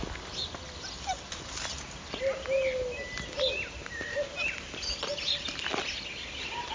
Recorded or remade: recorded